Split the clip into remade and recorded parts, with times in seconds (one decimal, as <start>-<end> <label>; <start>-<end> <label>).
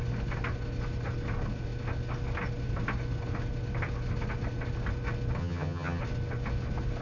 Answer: 0.0-5.4 recorded; 5.4-6.0 remade; 6.0-7.0 recorded